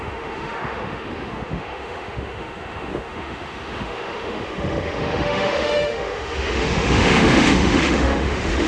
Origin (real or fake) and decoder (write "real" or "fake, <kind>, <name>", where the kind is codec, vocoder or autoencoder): fake, autoencoder, DAC-VAE